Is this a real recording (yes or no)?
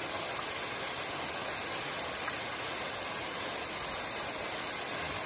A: yes